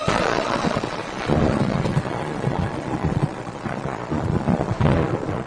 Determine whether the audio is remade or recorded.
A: remade